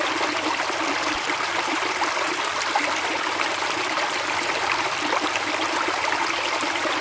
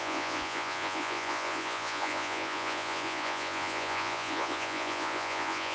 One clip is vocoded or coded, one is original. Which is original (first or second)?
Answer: first